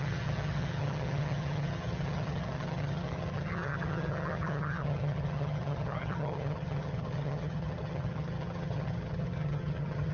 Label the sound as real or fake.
fake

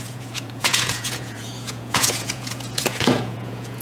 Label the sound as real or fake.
fake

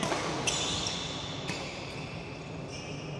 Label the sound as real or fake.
real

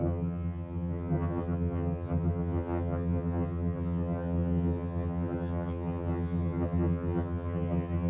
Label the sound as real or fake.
fake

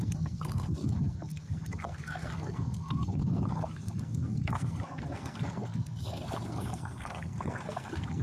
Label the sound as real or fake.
fake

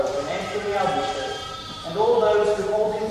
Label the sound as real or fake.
fake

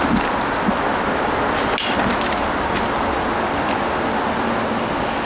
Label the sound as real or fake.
real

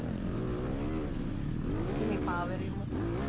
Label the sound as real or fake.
real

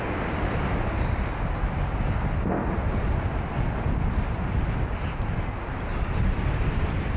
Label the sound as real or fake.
real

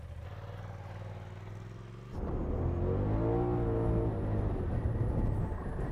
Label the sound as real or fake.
real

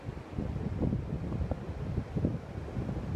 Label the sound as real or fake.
real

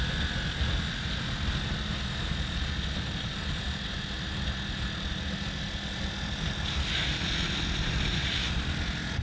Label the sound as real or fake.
real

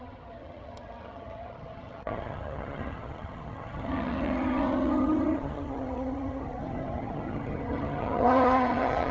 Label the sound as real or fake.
fake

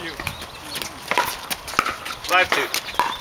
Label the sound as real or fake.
real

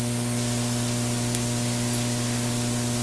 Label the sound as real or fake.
real